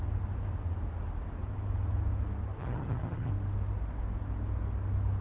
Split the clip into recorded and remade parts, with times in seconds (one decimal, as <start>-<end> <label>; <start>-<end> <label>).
0.0-2.6 recorded; 2.6-3.3 remade; 3.3-5.2 recorded

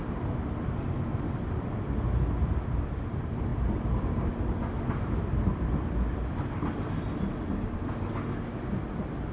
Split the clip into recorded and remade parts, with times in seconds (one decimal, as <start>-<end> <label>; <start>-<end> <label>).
0.0-9.3 recorded

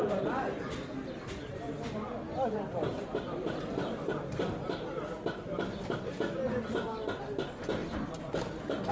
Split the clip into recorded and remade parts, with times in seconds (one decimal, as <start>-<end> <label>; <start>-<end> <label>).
0.0-8.9 recorded

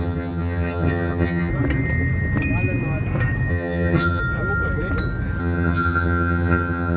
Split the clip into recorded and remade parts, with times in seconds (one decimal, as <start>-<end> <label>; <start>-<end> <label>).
0.0-1.5 remade; 1.5-3.5 recorded; 3.5-4.2 remade; 4.2-5.4 recorded; 5.4-7.0 remade

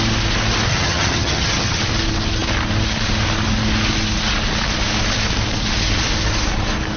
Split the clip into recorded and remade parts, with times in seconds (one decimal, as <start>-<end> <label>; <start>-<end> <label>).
0.0-0.7 recorded; 0.7-1.8 remade; 1.8-7.0 recorded

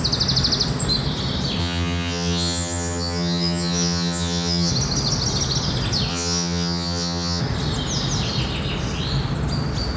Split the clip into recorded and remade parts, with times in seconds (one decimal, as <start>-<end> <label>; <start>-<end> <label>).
0.0-1.6 recorded; 1.6-4.7 remade; 4.7-6.1 recorded; 6.1-7.4 remade; 7.4-10.0 recorded

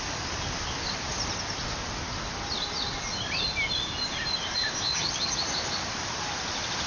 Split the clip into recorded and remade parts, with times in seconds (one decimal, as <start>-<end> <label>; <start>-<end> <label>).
0.0-4.9 recorded; 4.9-5.4 remade; 5.4-6.9 recorded

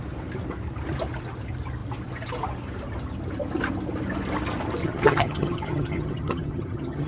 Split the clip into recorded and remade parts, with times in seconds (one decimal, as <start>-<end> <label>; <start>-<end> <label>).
0.0-4.8 recorded; 4.8-7.1 remade